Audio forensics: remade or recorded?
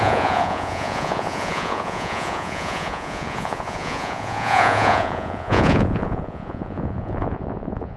remade